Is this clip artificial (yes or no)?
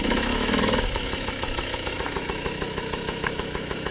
yes